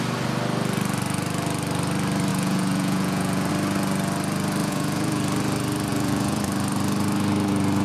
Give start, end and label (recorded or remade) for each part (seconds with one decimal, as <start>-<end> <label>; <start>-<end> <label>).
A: 0.0-2.3 recorded; 2.3-3.5 remade; 3.5-4.6 recorded; 4.6-5.2 remade; 5.2-5.9 recorded; 5.9-6.4 remade; 6.4-7.8 recorded

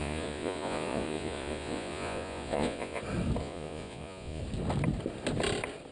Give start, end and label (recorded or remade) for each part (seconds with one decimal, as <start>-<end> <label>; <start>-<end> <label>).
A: 0.0-3.0 remade; 3.0-3.4 recorded; 3.4-4.4 remade; 4.4-5.9 recorded